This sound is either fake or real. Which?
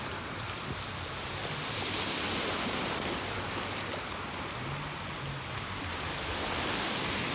real